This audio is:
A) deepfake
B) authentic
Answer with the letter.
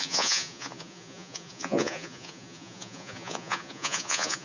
A